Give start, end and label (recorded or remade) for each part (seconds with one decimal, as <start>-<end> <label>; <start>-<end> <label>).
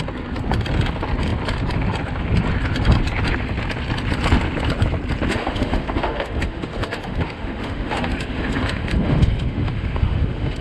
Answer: 0.0-5.3 recorded; 5.3-10.6 remade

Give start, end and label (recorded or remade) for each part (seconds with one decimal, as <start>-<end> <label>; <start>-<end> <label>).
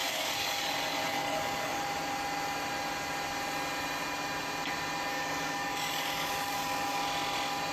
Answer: 0.0-0.6 remade; 0.6-1.1 recorded; 1.1-1.8 remade; 1.8-5.1 recorded; 5.1-7.0 remade; 7.0-7.7 recorded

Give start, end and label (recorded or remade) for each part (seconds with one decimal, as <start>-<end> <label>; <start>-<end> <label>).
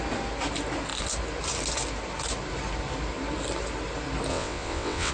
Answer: 0.0-4.3 recorded; 4.3-5.1 remade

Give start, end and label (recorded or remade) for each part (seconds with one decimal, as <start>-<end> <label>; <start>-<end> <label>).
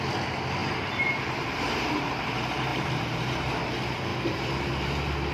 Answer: 0.0-0.6 recorded; 0.6-2.0 remade; 2.0-2.7 recorded; 2.7-3.5 remade; 3.5-4.1 recorded; 4.1-4.7 remade; 4.7-5.3 recorded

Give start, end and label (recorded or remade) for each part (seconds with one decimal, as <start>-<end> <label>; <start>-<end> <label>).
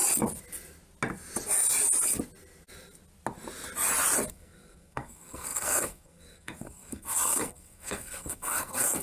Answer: 0.0-4.3 recorded; 4.3-9.0 remade